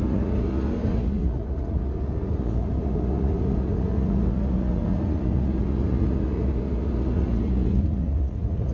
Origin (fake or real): fake